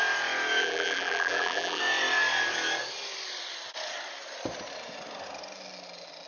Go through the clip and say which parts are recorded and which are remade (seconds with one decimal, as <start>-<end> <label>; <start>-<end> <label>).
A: 0.0-0.6 recorded; 0.6-1.8 remade; 1.8-6.3 recorded